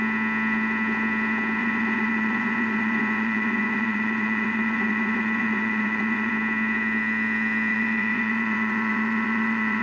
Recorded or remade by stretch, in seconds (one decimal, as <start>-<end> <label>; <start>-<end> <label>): 0.0-1.6 recorded; 1.6-6.3 remade; 6.3-7.7 recorded; 7.7-9.8 remade